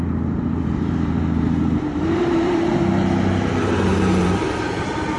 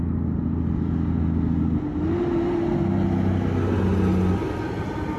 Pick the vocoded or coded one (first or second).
first